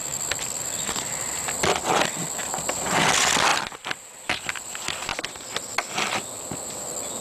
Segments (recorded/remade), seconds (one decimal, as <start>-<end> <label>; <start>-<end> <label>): 0.0-7.2 recorded